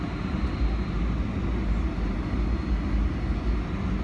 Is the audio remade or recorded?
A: recorded